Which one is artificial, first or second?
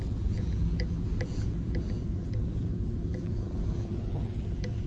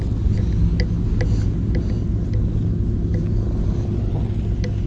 first